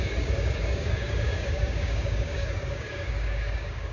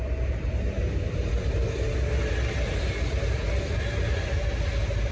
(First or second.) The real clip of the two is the second